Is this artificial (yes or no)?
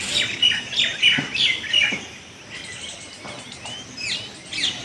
no